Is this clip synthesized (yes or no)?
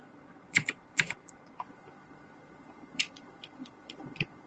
yes